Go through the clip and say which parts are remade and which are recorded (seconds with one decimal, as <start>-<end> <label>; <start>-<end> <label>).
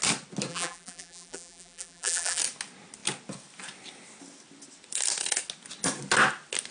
0.0-0.5 recorded; 0.5-2.4 remade; 2.4-6.7 recorded